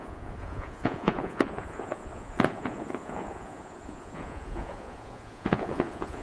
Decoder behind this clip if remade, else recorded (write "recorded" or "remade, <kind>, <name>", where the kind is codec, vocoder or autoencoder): remade, vocoder, Vocos